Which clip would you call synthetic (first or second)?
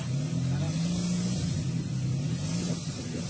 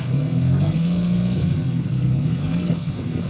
second